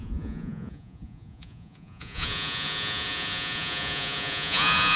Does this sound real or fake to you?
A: fake